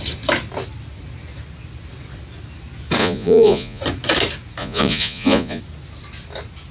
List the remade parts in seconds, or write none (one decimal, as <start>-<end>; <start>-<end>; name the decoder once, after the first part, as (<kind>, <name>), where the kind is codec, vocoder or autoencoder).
3.0-3.8 (vocoder, Vocos); 4.6-5.6